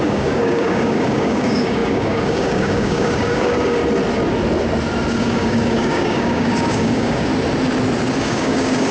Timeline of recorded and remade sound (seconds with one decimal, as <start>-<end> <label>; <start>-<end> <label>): 0.0-3.8 remade; 3.8-5.2 recorded; 5.2-7.3 remade; 7.3-8.2 recorded; 8.2-8.9 remade